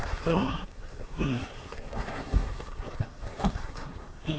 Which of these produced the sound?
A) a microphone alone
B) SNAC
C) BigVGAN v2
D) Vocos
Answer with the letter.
B